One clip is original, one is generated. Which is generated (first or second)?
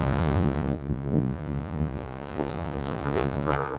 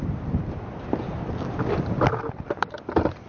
first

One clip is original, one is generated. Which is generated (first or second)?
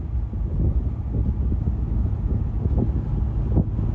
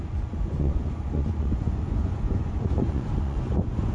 second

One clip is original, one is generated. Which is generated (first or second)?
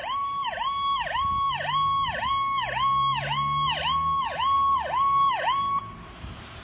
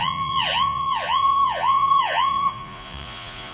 second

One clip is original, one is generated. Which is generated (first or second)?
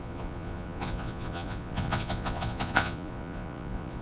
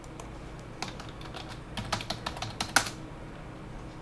first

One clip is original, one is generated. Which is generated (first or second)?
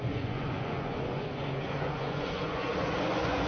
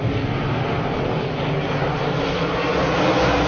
first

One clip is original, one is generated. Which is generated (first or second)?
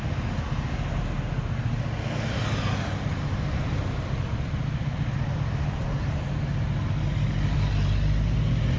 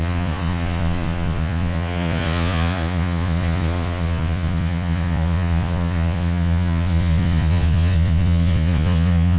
second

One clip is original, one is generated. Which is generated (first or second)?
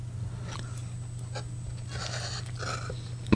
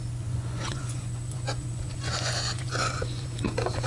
second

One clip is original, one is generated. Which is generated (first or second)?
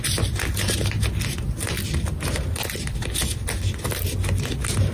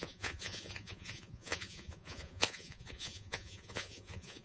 second